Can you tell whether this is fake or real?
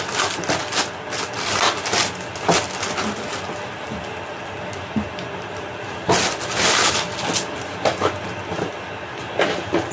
real